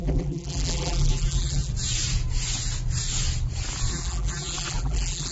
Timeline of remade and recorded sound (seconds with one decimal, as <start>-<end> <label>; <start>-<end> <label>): 0.0-1.7 remade; 1.7-3.9 recorded; 3.9-5.3 remade